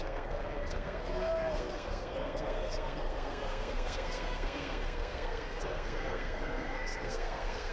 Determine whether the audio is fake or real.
fake